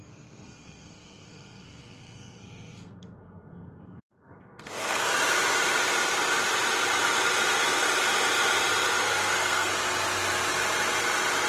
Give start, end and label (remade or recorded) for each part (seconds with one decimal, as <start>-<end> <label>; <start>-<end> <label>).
0.0-5.0 remade; 5.0-9.0 recorded; 9.0-9.7 remade; 9.7-11.5 recorded